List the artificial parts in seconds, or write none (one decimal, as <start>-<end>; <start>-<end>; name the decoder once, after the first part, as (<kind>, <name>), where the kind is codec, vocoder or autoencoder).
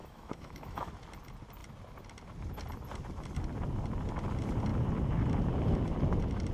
0.0-0.9 (autoencoder, DAC-VAE)